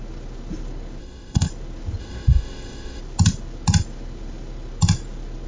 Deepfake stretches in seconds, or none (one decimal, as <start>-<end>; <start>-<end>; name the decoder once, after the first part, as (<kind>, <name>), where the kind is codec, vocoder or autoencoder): 1.0-1.5 (codec, ZipCodec); 2.0-3.0

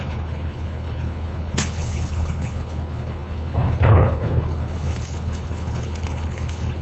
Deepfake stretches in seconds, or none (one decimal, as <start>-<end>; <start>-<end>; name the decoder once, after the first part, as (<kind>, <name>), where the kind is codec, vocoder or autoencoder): 0.0-6.8 (codec, HILCodec)

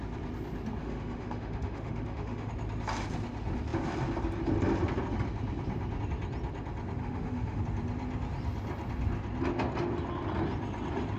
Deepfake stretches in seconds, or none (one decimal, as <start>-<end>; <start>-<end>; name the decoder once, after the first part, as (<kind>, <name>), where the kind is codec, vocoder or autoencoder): 0.8-2.5 (autoencoder, DAC-VAE); 7.0-7.6